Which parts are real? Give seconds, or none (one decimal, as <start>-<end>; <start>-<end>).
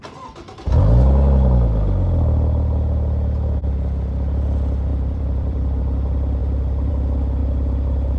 0.0-4.9; 5.8-7.4